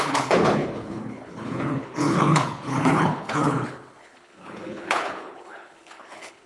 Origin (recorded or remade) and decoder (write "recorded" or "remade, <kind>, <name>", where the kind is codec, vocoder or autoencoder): remade, codec, HILCodec